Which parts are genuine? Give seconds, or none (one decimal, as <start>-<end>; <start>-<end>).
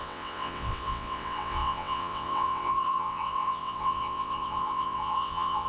none